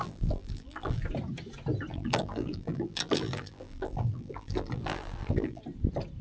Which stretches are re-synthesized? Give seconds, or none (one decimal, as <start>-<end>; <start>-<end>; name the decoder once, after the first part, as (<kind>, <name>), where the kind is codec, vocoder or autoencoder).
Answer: 0.0-1.0 (vocoder, BigVGAN v2); 1.9-5.6